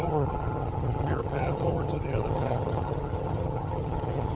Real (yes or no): no